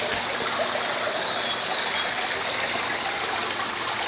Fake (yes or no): no